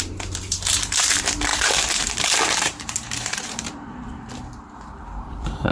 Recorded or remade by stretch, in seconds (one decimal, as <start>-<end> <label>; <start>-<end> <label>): 0.0-5.7 remade